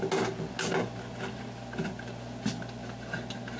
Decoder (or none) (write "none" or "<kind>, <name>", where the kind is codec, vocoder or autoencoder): none